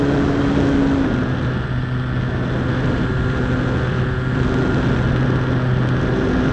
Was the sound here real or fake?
real